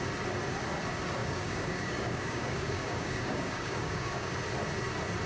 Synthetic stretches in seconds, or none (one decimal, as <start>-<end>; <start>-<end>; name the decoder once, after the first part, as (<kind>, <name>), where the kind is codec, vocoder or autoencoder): 1.2-4.4 (codec, DAC)